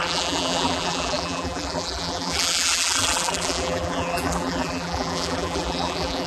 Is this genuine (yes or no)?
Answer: no